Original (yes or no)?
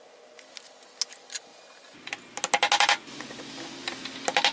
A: yes